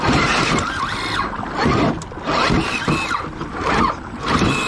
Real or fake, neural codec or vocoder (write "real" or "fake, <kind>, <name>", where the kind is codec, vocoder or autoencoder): real